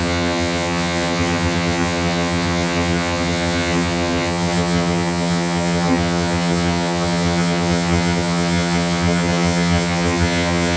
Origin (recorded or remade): remade